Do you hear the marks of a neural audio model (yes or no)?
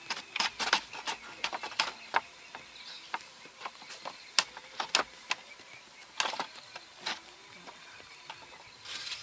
no